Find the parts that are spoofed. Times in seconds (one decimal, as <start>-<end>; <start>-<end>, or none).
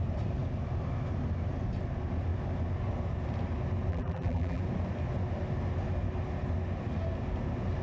3.9-4.6